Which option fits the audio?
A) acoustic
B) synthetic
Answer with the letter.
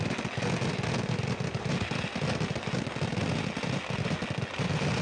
A